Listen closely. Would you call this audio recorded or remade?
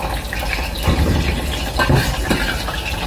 recorded